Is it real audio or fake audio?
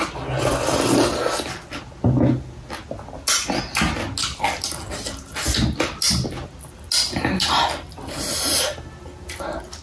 real